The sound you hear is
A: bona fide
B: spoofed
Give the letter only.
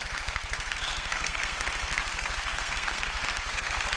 B